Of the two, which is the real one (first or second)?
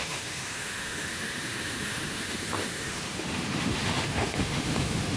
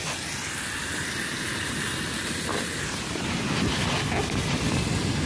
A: second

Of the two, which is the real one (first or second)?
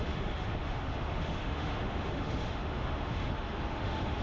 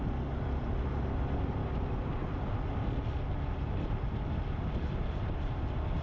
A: second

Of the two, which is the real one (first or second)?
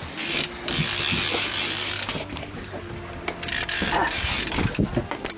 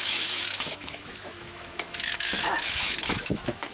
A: first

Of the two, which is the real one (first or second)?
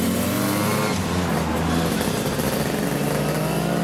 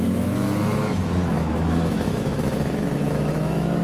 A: first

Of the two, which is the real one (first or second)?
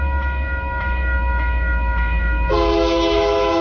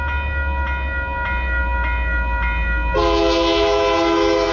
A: second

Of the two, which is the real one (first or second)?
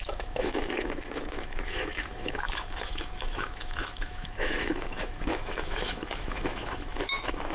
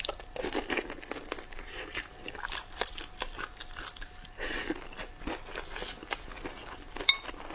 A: second